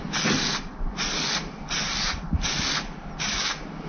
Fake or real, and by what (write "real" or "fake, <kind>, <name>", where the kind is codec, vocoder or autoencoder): real